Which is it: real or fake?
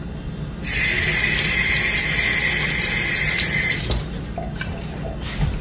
real